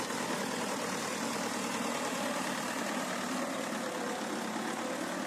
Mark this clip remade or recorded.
remade